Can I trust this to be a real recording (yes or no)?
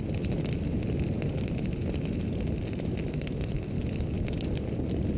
yes